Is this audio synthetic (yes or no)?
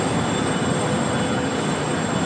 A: no